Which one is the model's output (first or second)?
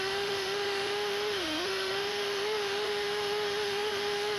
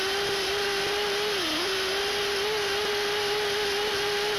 first